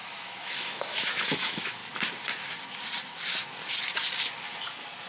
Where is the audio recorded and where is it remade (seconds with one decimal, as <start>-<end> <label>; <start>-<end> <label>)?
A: 0.0-1.8 remade; 1.8-5.1 recorded